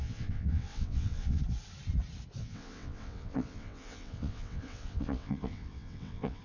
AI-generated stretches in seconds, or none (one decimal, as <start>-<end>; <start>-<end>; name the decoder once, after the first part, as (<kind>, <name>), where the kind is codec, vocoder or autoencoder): 0.0-1.4 (vocoder, WaveNeXt); 2.4-6.4

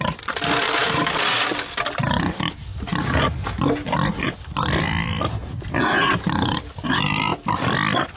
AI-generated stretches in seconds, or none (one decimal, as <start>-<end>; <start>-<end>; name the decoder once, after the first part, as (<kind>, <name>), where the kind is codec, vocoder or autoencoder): none

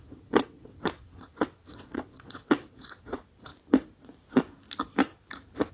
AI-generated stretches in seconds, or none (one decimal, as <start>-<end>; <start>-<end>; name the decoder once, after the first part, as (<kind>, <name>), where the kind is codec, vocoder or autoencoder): 0.0-3.5 (vocoder, WaveNeXt)

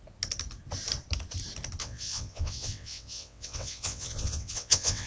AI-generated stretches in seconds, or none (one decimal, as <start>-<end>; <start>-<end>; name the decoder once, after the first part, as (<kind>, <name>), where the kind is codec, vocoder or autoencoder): 1.8-5.1 (vocoder, WaveNeXt)

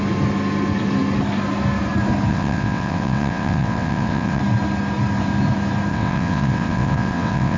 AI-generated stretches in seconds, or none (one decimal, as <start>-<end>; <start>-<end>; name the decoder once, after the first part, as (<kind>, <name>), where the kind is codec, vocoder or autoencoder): 2.3-4.4 (vocoder, WaveNeXt); 5.9-7.6

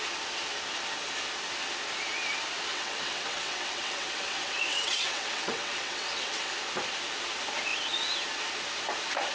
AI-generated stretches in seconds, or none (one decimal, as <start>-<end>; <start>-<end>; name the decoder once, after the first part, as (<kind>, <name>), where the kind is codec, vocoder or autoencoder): 2.7-6.5 (vocoder, WaveNeXt)

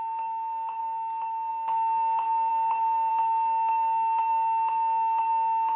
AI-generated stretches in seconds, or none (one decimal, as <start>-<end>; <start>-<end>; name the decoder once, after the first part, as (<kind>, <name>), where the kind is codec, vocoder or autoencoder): none

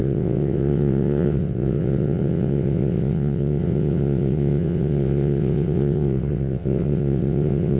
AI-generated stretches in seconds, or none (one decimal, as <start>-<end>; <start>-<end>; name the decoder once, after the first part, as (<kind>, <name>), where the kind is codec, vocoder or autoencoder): 0.0-7.8 (vocoder, WaveNeXt)